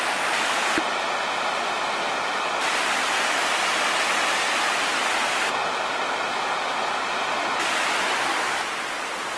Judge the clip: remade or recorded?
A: recorded